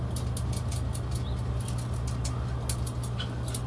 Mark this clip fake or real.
real